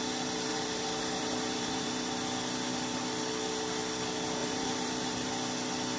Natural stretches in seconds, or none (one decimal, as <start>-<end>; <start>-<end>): 0.0-0.5; 1.9-4.4; 5.3-6.0